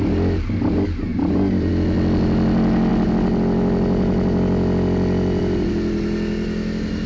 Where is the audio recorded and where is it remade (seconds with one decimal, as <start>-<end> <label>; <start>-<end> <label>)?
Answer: 0.0-1.1 recorded; 1.1-1.7 remade; 1.7-7.1 recorded